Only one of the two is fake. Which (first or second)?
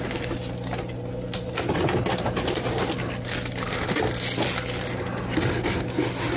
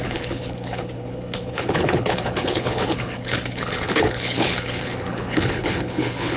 second